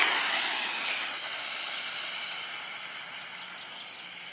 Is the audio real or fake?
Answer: real